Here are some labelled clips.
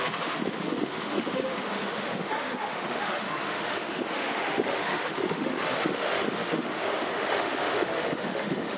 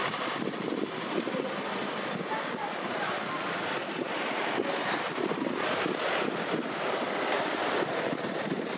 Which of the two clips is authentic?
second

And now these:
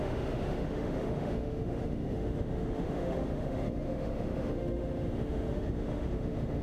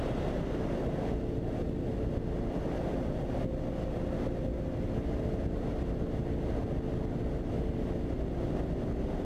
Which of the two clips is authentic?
second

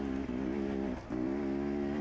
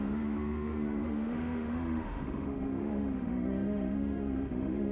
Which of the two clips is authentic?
first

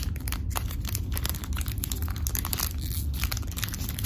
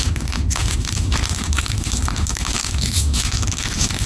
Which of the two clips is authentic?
first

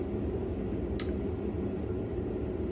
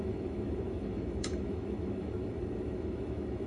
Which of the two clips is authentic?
first